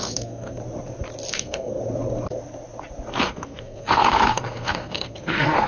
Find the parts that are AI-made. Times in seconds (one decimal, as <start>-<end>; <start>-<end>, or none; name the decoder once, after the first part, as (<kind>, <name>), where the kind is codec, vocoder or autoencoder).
0.0-0.6 (codec, SNAC); 1.3-1.8; 3.2-5.7